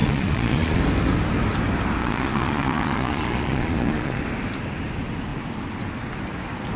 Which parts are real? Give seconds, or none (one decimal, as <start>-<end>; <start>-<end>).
0.8-2.0; 4.2-6.8